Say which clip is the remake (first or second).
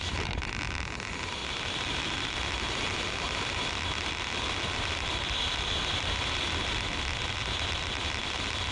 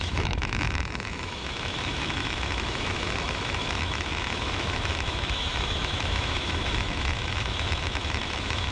second